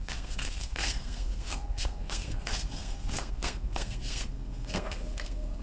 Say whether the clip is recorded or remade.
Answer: remade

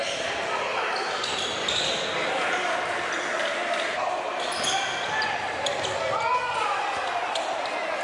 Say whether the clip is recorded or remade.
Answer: recorded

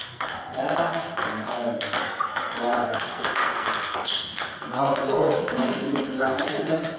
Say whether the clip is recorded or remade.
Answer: remade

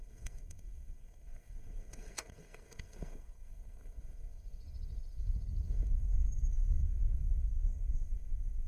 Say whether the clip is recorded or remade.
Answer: remade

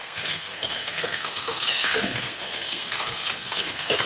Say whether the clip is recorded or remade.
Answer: remade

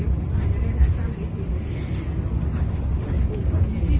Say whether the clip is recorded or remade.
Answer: recorded